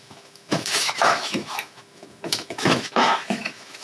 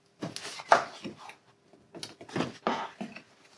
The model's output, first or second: first